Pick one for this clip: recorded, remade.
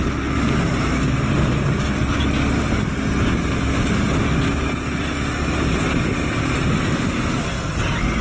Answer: recorded